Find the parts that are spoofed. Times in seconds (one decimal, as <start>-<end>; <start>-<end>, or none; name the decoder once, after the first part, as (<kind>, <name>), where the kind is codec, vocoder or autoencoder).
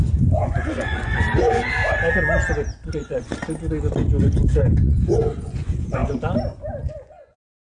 0.0-1.8 (vocoder, Vocos); 2.9-3.3; 4.2-6.0; 6.9-7.7